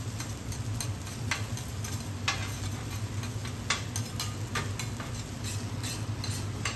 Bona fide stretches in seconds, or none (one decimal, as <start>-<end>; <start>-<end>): 0.0-6.8